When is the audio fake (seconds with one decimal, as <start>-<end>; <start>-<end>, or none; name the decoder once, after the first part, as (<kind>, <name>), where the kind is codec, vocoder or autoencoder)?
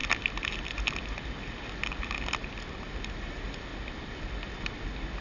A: 3.1-3.7 (vocoder, BigVGAN v2)